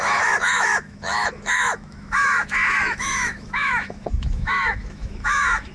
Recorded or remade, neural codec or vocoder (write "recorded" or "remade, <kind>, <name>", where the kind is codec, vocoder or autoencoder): remade, autoencoder, DAC-VAE